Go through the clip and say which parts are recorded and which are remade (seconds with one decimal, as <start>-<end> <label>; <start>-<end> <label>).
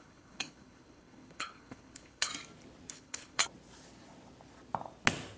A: 0.0-2.3 remade; 2.3-2.9 recorded; 2.9-3.4 remade; 3.4-5.4 recorded